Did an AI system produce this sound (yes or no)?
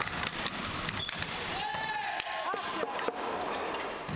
no